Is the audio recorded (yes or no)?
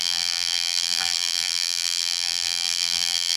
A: no